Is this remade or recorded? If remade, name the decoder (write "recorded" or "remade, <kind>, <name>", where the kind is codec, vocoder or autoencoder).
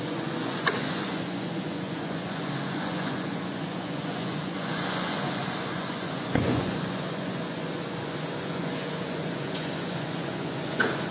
remade, vocoder, Vocos